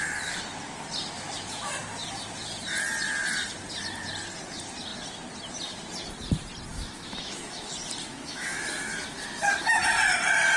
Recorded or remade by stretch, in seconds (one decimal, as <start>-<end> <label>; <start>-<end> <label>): 0.0-6.7 recorded; 6.7-7.7 remade; 7.7-8.1 recorded; 8.1-9.8 remade; 9.8-10.6 recorded